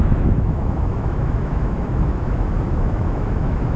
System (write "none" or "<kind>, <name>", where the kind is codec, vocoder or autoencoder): autoencoder, DAC-VAE